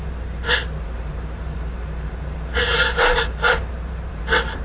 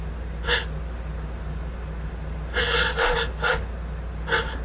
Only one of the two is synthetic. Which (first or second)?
first